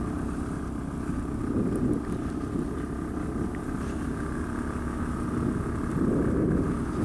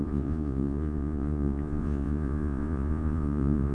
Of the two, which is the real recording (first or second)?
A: first